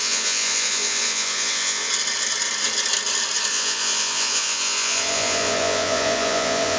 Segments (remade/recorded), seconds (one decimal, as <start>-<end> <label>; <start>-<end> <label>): 0.0-1.9 remade; 1.9-3.5 recorded; 3.5-6.8 remade

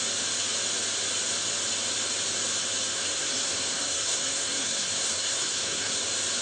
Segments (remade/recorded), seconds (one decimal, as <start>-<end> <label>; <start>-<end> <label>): 0.0-2.9 recorded; 2.9-6.0 remade; 6.0-6.4 recorded

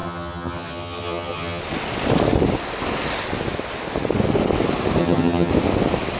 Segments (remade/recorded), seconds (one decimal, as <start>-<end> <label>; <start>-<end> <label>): 0.0-1.6 remade; 1.6-5.0 recorded; 5.0-5.5 remade; 5.5-6.2 recorded

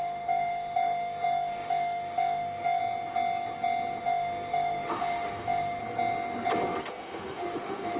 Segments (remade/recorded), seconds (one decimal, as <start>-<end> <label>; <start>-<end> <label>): 0.0-2.8 remade; 2.8-4.0 recorded; 4.0-5.8 remade; 5.8-6.9 recorded; 6.9-8.0 remade

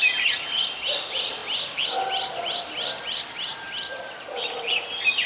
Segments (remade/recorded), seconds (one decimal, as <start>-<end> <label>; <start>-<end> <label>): 0.0-5.3 recorded